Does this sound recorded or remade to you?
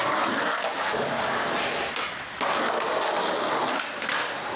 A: recorded